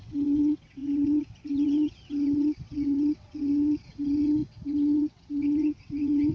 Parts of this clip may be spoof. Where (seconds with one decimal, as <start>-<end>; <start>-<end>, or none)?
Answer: 0.0-6.3